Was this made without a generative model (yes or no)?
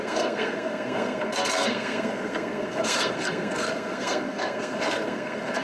no